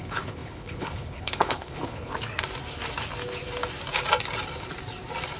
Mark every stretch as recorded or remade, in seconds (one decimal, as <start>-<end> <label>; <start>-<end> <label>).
0.0-2.1 remade; 2.1-5.4 recorded